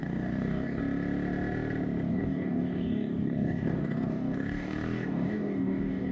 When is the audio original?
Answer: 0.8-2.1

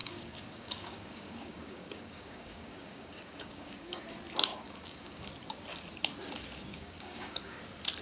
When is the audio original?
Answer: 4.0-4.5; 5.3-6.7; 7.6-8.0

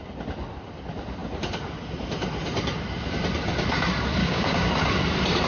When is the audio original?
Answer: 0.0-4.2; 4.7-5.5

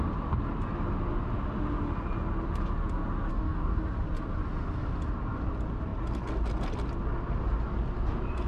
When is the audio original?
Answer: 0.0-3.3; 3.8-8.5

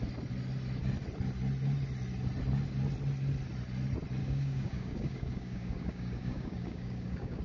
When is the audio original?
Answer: 0.0-4.2

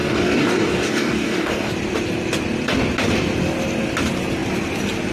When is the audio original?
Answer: 1.7-5.1